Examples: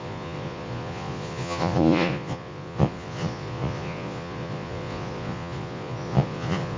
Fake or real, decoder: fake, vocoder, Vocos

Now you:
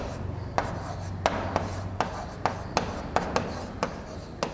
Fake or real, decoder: real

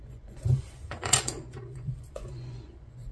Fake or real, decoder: fake, vocoder, Vocos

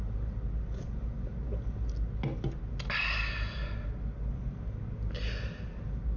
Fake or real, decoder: real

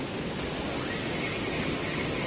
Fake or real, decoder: real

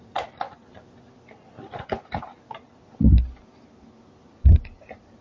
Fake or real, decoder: real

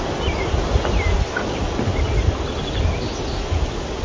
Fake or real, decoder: real